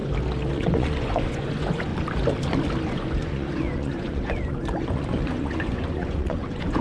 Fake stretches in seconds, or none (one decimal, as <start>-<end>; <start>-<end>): 0.5-1.9; 2.9-6.8